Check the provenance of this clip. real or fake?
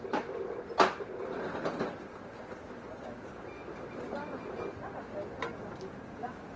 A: real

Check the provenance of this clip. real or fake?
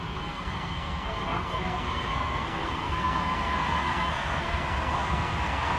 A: fake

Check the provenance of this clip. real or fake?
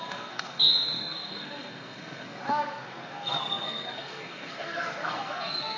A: fake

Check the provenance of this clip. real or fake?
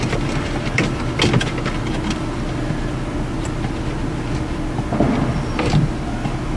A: real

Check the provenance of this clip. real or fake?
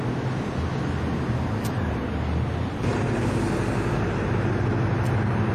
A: real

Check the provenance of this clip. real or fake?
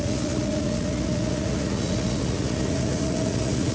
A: fake